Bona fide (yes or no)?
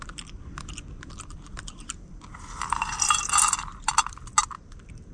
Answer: yes